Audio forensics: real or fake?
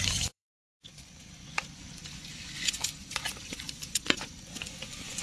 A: fake